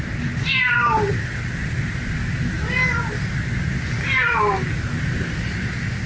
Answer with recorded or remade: recorded